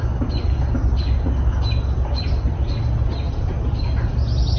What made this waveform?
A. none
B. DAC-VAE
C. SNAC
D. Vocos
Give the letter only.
A